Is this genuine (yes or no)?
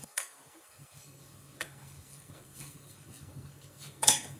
no